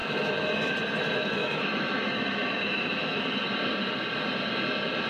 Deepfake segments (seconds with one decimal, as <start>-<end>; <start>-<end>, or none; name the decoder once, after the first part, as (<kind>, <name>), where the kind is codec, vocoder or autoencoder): 0.0-0.7 (autoencoder, DAC-VAE); 1.4-3.4